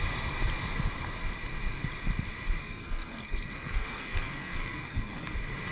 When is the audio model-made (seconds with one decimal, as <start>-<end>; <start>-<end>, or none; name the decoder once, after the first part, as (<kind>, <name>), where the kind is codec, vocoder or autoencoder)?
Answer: 2.6-5.2 (codec, SNAC)